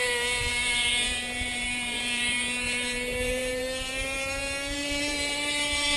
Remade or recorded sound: remade